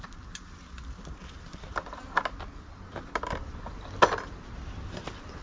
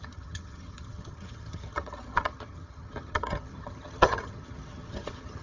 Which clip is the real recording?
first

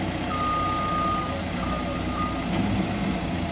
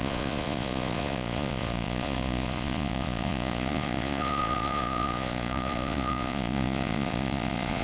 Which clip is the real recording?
first